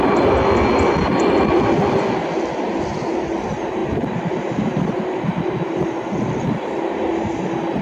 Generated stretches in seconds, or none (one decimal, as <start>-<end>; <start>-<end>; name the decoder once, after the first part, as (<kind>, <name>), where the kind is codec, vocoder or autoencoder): none